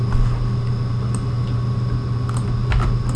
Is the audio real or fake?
real